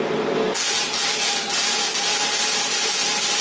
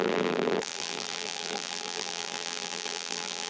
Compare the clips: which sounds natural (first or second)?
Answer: first